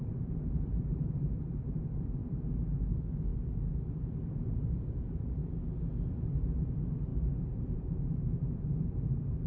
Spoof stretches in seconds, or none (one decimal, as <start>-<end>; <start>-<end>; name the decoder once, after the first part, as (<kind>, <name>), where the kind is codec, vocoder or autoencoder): 0.0-3.3 (vocoder, BigVGAN v2); 3.9-5.4; 6.3-9.5